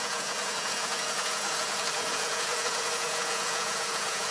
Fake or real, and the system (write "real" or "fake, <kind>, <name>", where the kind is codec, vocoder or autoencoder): fake, vocoder, Vocos